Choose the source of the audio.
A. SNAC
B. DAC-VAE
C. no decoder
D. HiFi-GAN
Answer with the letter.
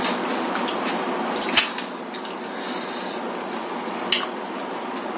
C